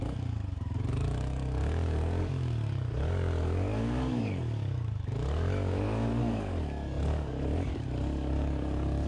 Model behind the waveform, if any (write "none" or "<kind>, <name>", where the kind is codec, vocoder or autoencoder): codec, DAC